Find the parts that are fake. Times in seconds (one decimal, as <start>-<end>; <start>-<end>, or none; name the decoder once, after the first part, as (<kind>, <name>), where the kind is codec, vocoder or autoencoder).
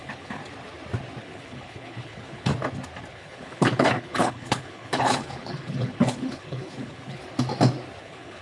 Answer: 0.0-0.4 (codec, HILCodec); 1.2-2.5; 3.1-7.2; 8.0-8.4